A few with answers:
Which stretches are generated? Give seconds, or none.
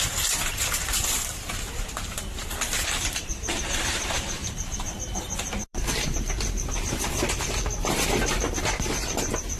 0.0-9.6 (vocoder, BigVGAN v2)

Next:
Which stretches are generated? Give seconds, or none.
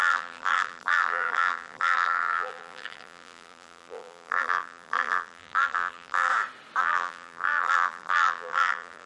0.0-6.3 (vocoder, BigVGAN v2); 6.8-9.1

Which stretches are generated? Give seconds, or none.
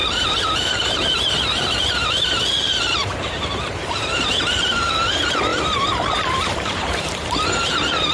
0.0-2.3 (vocoder, BigVGAN v2); 3.1-4.4; 5.5-8.1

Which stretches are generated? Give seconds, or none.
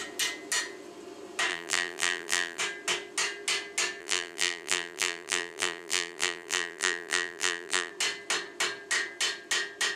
1.5-2.6 (vocoder, BigVGAN v2); 4.0-7.9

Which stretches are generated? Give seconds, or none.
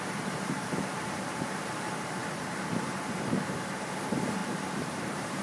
0.0-5.4 (vocoder, BigVGAN v2)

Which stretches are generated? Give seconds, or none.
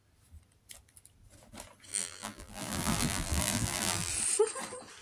1.9-4.1 (vocoder, BigVGAN v2)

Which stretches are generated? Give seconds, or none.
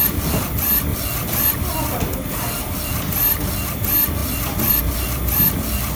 0.9-1.5 (vocoder, BigVGAN v2); 4.2-4.8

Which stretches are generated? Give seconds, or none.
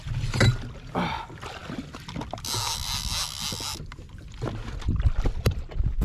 none